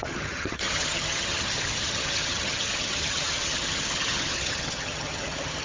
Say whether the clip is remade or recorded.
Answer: remade